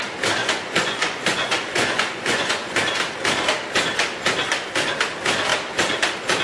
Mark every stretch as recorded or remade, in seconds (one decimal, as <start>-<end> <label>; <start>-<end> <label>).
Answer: 0.0-0.4 recorded; 0.4-2.8 remade; 2.8-6.4 recorded